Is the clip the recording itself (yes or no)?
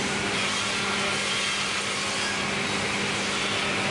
yes